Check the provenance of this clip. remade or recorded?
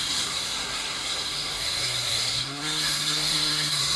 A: remade